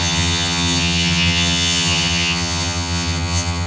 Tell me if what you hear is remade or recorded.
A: remade